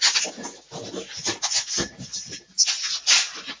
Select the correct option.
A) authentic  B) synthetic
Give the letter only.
A